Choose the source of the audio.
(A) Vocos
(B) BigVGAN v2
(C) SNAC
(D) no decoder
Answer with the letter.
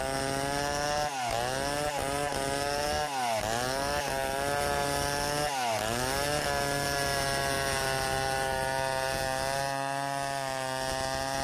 D